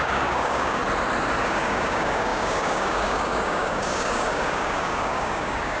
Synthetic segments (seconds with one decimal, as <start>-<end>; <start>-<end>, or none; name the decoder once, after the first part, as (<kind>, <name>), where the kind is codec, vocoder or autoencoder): 0.0-0.8 (codec, DAC); 1.4-5.8